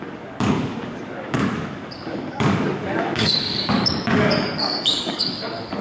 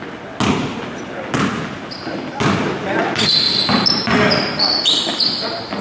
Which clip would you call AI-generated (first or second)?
first